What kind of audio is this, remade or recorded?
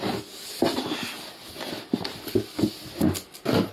recorded